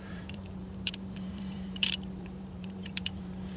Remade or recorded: remade